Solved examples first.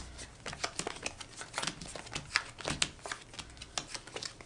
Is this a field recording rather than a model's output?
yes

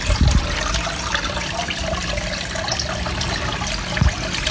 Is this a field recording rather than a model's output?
yes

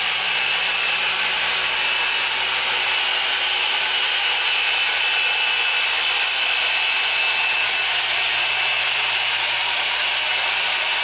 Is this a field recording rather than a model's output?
yes